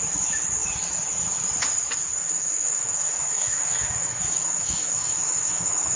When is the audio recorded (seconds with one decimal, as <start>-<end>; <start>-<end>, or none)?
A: 0.0-2.2